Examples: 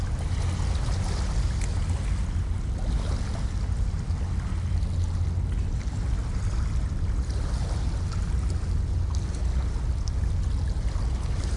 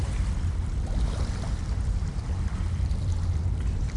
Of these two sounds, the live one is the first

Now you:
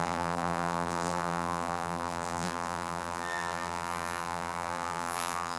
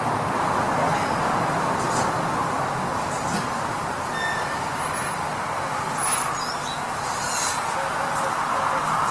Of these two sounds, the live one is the second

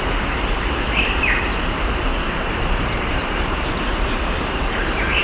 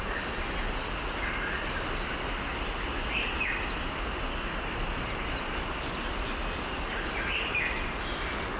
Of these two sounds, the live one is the second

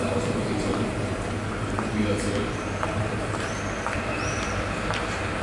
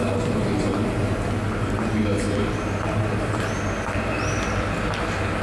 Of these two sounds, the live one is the second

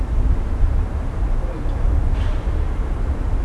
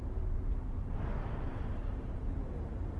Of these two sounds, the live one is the first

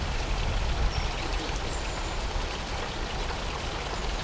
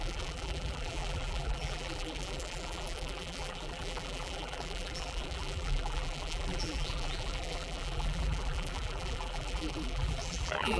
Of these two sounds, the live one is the first